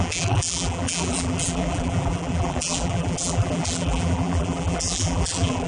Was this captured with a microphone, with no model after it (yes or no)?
no